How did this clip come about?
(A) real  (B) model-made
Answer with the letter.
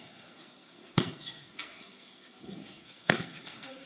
B